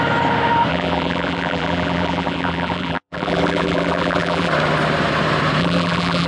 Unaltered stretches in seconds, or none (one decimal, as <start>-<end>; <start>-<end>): 0.0-0.7; 4.5-5.6